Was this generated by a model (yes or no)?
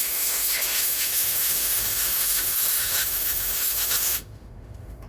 yes